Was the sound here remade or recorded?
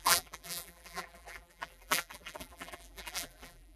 remade